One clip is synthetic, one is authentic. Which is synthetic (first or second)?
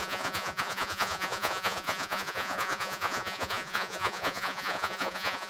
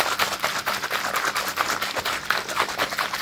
first